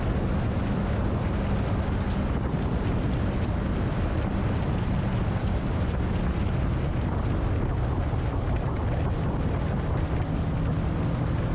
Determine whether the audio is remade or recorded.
recorded